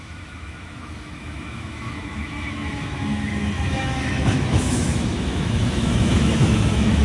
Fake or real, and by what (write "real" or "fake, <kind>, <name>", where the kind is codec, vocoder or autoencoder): fake, autoencoder, DAC-VAE